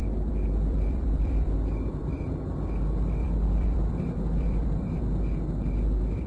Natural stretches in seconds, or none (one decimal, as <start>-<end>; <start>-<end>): 2.2-3.2; 5.0-6.3